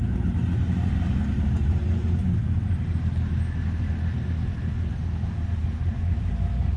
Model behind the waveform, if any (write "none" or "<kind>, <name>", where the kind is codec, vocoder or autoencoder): none